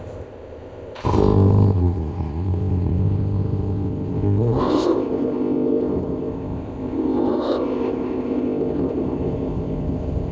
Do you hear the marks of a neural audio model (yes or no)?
yes